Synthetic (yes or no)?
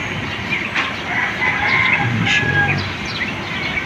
no